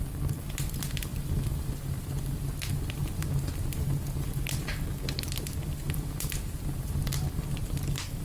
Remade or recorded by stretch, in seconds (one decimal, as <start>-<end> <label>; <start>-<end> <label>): 0.0-8.2 recorded